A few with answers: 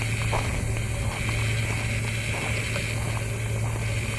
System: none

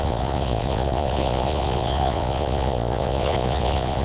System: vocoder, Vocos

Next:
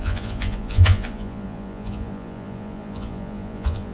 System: vocoder, Vocos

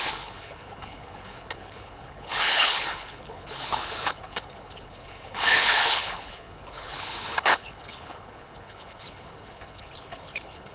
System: codec, HILCodec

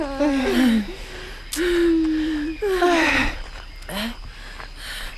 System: none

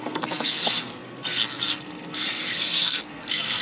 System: codec, SNAC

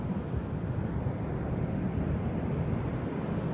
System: none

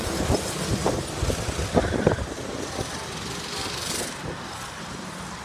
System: none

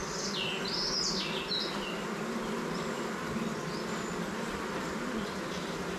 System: none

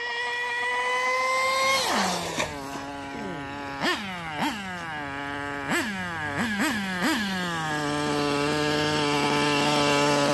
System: none